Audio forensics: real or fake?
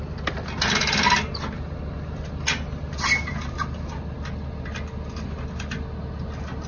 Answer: real